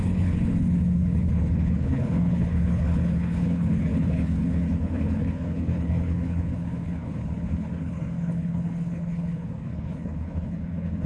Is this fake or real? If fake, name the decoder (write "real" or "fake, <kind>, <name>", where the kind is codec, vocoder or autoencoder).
fake, codec, HILCodec